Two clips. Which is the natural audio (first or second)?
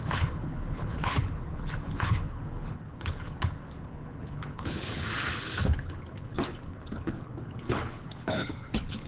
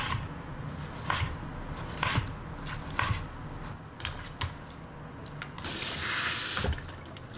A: second